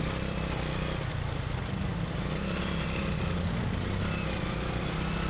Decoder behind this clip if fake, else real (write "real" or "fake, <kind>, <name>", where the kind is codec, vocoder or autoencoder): real